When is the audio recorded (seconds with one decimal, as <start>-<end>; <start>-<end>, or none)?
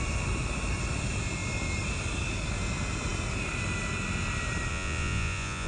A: 0.0-4.7